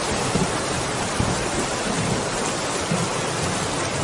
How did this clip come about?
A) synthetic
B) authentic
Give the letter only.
B